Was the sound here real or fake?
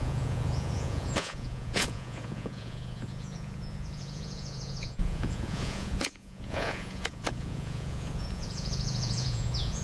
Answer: fake